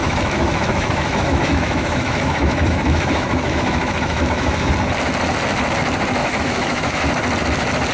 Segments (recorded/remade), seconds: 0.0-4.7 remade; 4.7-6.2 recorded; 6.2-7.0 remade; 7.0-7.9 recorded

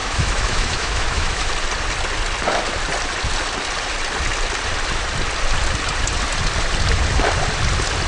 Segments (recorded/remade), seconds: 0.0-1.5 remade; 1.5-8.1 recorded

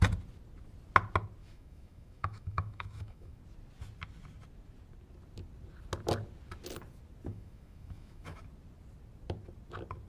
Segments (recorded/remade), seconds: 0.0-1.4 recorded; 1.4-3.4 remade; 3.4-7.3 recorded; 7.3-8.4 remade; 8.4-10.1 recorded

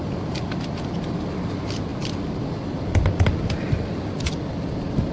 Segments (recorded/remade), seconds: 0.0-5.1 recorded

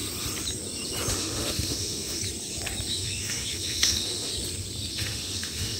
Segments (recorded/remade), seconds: 0.0-1.1 recorded; 1.1-2.2 remade; 2.2-2.9 recorded; 2.9-4.3 remade; 4.3-4.9 recorded; 4.9-5.8 remade

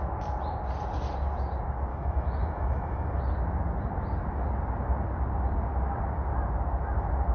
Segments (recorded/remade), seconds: 0.0-1.9 recorded; 1.9-3.2 remade; 3.2-7.3 recorded

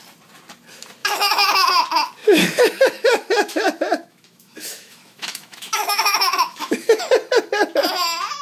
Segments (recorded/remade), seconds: 0.0-1.0 recorded; 1.0-1.7 remade; 1.7-2.2 recorded; 2.2-7.0 remade; 7.0-8.4 recorded

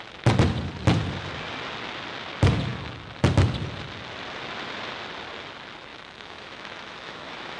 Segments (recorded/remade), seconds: 0.0-5.9 recorded; 5.9-7.6 remade